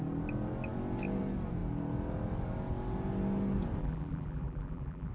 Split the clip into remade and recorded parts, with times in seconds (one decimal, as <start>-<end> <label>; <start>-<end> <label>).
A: 0.0-3.8 recorded; 3.8-5.1 remade